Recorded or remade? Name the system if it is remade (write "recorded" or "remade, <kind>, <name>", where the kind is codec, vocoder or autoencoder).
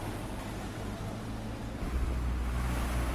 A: recorded